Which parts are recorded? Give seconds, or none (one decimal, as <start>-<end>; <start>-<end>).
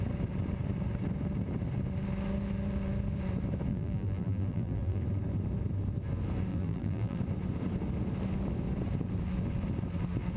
0.0-3.7; 5.0-6.5; 7.2-10.4